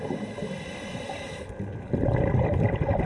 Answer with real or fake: fake